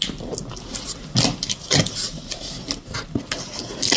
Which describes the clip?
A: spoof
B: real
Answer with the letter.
B